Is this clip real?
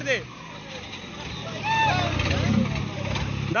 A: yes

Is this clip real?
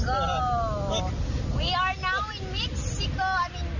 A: yes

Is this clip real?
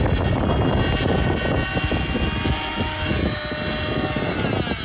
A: yes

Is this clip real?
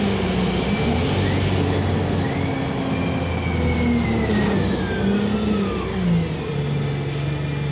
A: yes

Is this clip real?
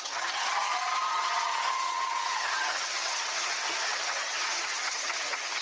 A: no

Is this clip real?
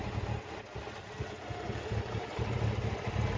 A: yes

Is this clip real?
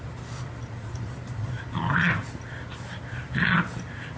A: yes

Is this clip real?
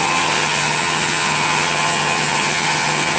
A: no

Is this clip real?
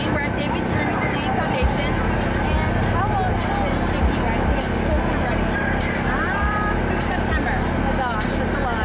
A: yes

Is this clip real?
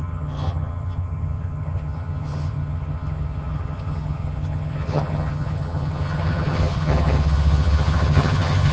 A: no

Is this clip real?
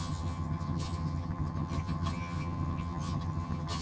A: no